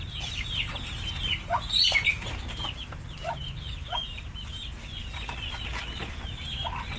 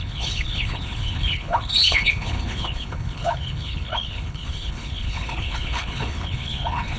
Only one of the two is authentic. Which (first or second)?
first